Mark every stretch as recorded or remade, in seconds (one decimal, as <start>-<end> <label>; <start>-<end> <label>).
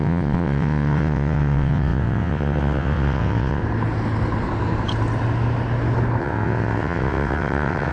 0.0-3.6 remade; 3.6-6.2 recorded; 6.2-7.9 remade